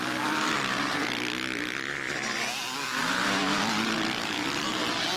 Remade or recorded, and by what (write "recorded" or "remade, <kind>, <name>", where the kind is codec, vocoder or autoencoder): recorded